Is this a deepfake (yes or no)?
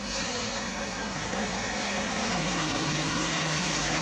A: yes